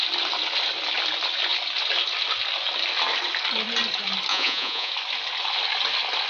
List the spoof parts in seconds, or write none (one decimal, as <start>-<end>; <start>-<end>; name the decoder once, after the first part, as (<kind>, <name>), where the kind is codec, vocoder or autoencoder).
4.3-4.9 (vocoder, Vocos)